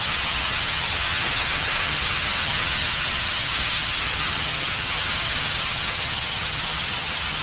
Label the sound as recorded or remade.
remade